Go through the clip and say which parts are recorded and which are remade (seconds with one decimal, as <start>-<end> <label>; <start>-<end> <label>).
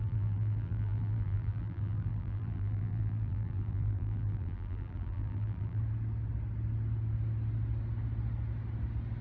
0.0-5.8 remade; 5.8-9.2 recorded